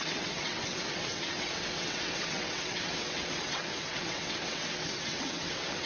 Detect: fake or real fake